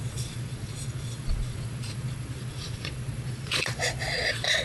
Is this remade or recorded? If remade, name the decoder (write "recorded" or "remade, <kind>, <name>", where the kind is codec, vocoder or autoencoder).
remade, vocoder, Vocos